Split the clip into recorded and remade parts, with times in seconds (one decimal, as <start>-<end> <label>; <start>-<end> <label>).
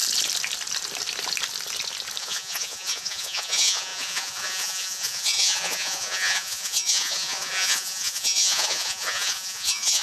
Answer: 0.0-2.2 recorded; 2.2-10.0 remade